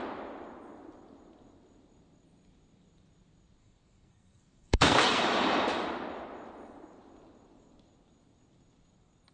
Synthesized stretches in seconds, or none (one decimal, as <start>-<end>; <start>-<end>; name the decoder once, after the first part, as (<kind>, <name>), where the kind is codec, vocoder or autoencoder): 3.6-5.2 (codec, SNAC)